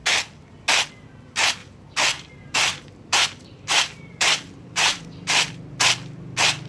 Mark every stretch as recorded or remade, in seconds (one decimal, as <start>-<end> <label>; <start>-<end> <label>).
0.0-1.6 recorded; 1.6-5.5 remade; 5.5-6.7 recorded

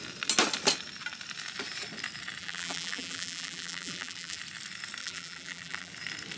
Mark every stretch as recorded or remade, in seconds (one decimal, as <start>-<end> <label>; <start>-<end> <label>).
0.0-2.4 recorded; 2.4-4.4 remade; 4.4-5.0 recorded; 5.0-5.9 remade; 5.9-6.4 recorded

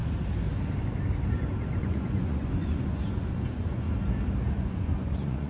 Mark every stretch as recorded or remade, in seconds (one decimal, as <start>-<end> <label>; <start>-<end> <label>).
0.0-1.8 recorded; 1.8-3.9 remade; 3.9-4.5 recorded; 4.5-5.5 remade

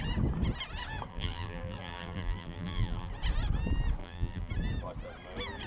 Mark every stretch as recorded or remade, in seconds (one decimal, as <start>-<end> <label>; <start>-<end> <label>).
0.0-1.1 recorded; 1.1-3.1 remade; 3.1-4.0 recorded; 4.0-4.5 remade; 4.5-5.7 recorded

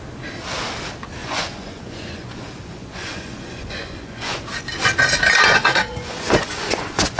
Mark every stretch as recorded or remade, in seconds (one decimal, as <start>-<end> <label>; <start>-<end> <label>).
0.0-1.2 recorded; 1.2-4.4 remade; 4.4-5.5 recorded; 5.5-7.2 remade

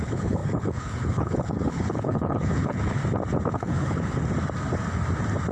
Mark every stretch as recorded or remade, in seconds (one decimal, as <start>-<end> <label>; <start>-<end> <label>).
0.0-3.0 remade; 3.0-3.5 recorded; 3.5-4.2 remade; 4.2-5.5 recorded

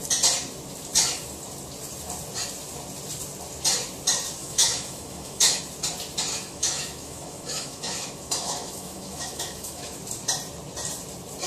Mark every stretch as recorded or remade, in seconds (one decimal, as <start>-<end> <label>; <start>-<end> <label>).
0.0-4.4 recorded; 4.4-5.6 remade; 5.6-6.3 recorded; 6.3-10.0 remade; 10.0-11.5 recorded

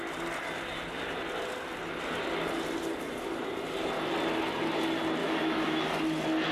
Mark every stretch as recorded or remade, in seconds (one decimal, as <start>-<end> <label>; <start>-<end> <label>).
0.0-5.2 recorded; 5.2-5.8 remade; 5.8-6.5 recorded